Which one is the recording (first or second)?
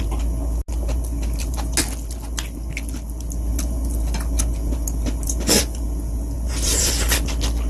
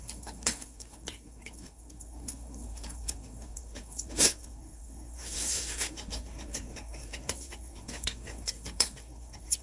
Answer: first